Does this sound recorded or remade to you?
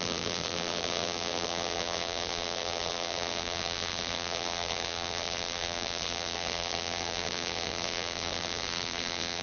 remade